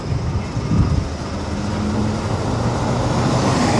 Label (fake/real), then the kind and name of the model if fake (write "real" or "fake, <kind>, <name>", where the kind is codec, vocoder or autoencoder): real